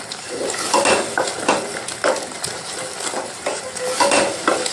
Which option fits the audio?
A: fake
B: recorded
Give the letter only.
B